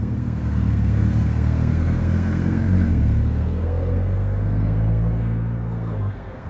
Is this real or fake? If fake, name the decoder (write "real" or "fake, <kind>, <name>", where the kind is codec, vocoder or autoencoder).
fake, codec, SNAC